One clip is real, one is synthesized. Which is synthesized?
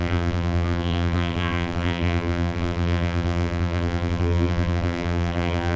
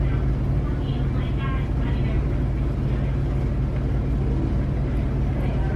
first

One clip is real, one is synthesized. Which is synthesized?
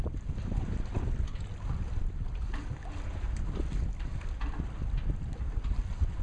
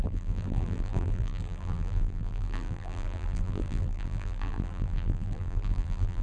second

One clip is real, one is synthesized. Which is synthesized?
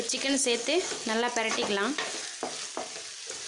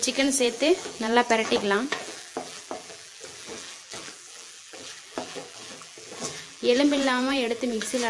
second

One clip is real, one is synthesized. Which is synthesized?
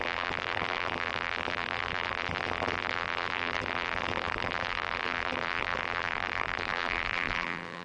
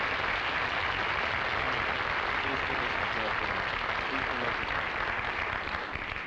first